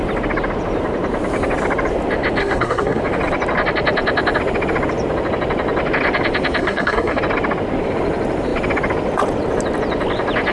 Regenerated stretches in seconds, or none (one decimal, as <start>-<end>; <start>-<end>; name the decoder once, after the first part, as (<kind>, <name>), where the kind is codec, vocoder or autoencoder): 2.4-3.0 (codec, SNAC); 6.6-7.2